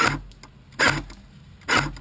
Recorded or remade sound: recorded